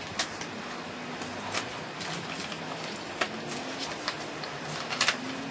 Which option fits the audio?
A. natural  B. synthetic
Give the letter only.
A